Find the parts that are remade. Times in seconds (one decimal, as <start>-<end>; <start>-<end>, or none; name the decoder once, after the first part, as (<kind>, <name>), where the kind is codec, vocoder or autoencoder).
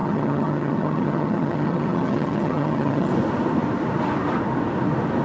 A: 0.0-3.1 (vocoder, HiFi-GAN)